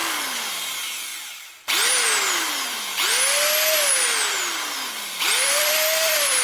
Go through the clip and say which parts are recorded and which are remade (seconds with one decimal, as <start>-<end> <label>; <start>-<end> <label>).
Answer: 0.0-0.5 recorded; 0.5-1.1 remade; 1.1-4.9 recorded; 4.9-6.4 remade